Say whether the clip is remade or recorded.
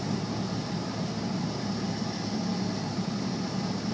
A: recorded